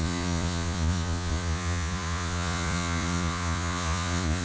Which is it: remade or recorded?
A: remade